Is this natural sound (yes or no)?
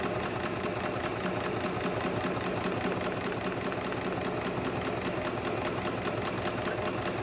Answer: yes